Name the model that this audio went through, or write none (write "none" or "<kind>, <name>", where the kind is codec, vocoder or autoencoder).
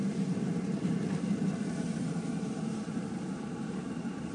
vocoder, BigVGAN v2